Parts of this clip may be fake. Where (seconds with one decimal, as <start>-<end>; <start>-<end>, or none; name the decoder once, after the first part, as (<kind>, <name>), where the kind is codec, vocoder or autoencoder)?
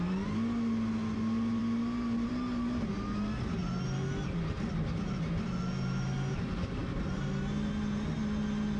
none